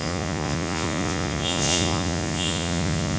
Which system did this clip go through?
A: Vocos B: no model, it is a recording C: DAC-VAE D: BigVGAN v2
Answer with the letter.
A